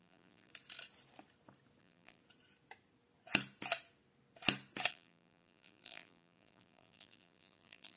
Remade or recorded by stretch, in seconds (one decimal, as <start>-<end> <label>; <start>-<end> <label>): 0.0-0.5 remade; 0.5-1.8 recorded; 1.8-2.2 remade; 2.2-4.9 recorded; 4.9-8.0 remade